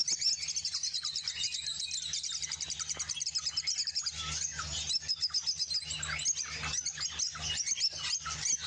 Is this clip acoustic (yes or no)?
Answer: yes